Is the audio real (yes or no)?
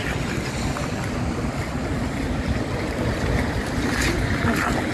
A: yes